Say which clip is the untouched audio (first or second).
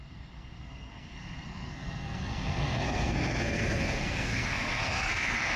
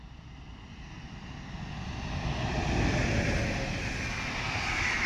second